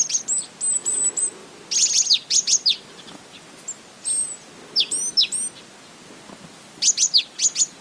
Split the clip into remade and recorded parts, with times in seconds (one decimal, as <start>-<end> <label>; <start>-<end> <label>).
0.0-7.8 recorded